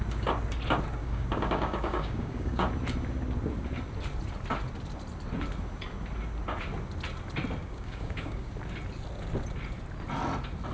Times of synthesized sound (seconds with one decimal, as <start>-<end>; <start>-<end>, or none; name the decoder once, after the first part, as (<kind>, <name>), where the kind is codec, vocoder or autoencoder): 1.0-2.7 (codec, DAC); 7.6-8.5